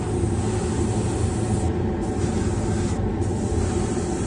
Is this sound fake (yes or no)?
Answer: no